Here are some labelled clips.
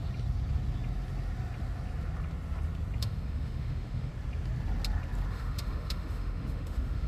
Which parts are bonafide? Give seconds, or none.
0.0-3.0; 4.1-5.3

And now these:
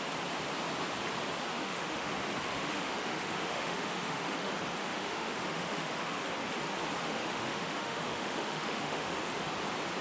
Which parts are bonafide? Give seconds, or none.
0.0-1.5; 2.1-2.5; 4.5-4.9; 6.2-7.0; 9.5-10.0

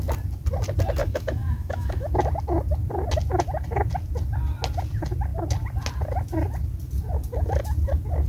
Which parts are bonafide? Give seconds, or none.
0.0-1.0; 2.1-8.3

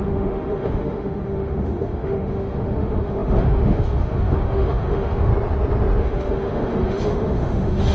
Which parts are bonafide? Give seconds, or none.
5.3-6.0

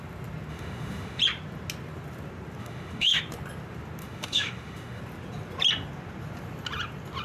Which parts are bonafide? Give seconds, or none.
0.0-0.5; 1.2-2.6; 3.2-4.0; 5.0-7.2